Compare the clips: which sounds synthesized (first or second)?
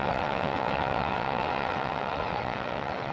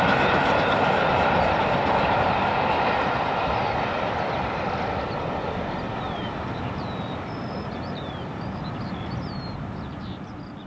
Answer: first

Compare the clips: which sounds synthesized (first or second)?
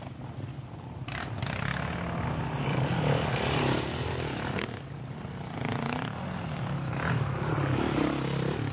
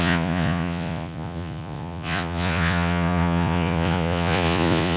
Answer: second